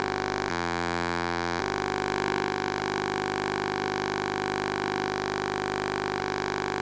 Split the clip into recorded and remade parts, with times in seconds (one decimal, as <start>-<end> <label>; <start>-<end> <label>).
0.0-0.5 recorded; 0.5-1.6 remade; 1.6-6.8 recorded